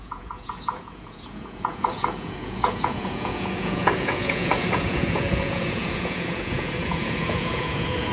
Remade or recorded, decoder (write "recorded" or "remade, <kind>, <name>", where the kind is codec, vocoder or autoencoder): remade, vocoder, Vocos